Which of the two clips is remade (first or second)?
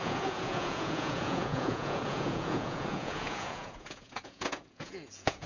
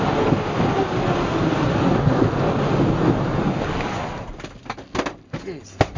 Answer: first